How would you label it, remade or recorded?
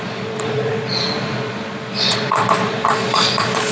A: remade